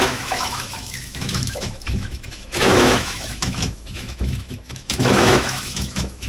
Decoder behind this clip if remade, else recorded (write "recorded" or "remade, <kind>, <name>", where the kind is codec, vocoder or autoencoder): remade, autoencoder, DAC-VAE